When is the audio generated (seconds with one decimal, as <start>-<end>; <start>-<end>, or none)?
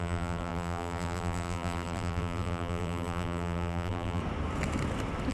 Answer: 0.0-4.2